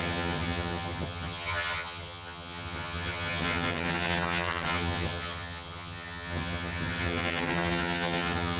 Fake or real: fake